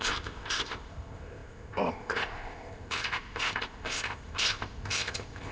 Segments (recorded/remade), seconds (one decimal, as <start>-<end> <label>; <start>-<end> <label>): 0.0-5.5 remade